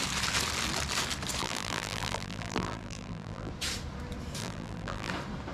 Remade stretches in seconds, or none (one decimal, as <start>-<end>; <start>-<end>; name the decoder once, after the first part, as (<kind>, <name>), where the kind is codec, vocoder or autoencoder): 1.4-3.5 (vocoder, BigVGAN v2); 4.4-5.1